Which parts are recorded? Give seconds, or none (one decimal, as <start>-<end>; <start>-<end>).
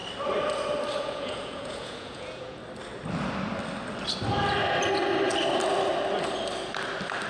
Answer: 0.0-1.0; 2.6-7.3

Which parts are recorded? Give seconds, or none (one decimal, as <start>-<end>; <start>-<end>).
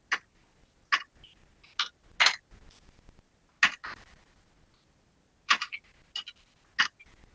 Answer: 0.0-7.3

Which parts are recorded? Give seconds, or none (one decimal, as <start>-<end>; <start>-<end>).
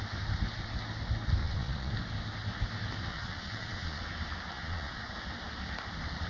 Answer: 0.0-1.4; 1.9-3.1; 4.0-4.5; 5.1-6.3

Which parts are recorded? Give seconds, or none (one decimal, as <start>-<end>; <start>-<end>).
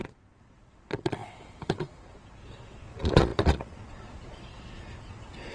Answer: none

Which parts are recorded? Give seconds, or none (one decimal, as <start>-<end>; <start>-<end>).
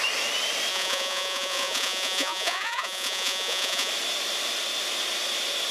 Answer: 0.0-0.7; 3.9-5.7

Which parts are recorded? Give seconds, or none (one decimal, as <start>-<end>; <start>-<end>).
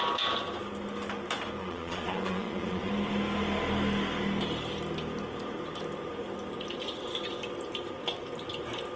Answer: 0.0-1.6; 2.9-9.0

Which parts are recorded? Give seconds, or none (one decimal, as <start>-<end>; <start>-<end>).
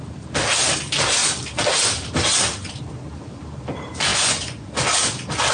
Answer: 0.0-4.1; 4.7-5.5